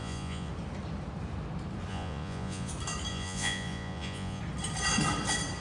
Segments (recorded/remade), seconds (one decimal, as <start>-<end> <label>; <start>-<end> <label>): 0.0-0.5 remade; 0.5-1.9 recorded; 1.9-2.7 remade; 2.7-3.1 recorded; 3.1-4.4 remade; 4.4-5.6 recorded